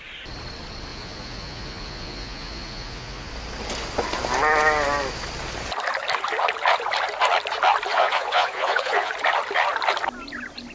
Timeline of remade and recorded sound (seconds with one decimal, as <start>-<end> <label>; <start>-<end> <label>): 0.0-0.9 recorded; 0.9-3.3 remade; 3.3-7.9 recorded; 7.9-9.1 remade; 9.1-10.7 recorded